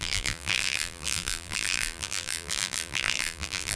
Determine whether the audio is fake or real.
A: fake